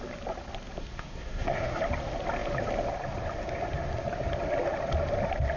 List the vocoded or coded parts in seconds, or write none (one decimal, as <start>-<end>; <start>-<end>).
0.8-1.8